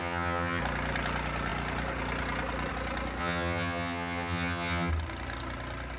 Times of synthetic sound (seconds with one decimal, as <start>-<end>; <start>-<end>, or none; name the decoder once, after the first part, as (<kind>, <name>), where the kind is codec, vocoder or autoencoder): 0.0-0.6 (vocoder, HiFi-GAN); 3.2-4.9